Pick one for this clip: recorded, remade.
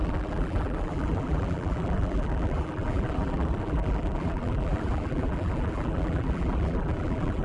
remade